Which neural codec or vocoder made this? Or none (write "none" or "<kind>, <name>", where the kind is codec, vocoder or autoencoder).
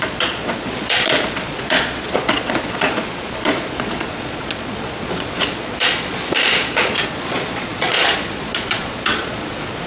vocoder, Vocos